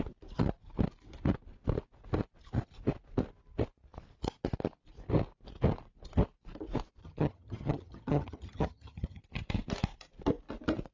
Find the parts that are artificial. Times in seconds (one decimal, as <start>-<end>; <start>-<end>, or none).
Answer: 7.0-9.2